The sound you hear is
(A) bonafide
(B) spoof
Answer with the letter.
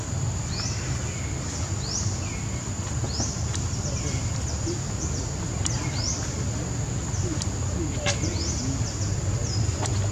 A